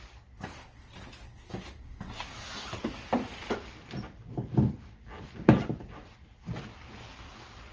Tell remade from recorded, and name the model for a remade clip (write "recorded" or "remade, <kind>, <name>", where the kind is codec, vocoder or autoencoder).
recorded